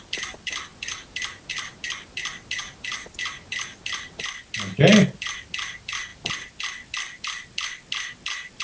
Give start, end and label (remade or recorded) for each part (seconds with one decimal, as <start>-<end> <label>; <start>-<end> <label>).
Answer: 0.0-8.6 recorded